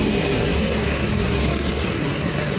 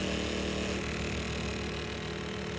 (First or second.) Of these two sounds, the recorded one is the second